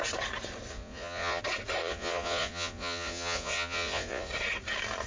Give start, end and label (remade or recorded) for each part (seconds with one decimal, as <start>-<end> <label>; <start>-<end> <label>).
0.0-0.7 recorded; 0.7-1.4 remade; 1.4-1.8 recorded; 1.8-4.3 remade; 4.3-5.1 recorded